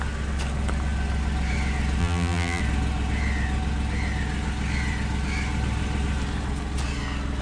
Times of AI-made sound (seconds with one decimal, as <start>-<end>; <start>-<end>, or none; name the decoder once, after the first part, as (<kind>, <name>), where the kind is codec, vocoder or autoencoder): 2.0-2.6 (vocoder, BigVGAN v2)